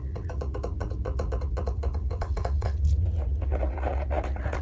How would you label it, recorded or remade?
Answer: remade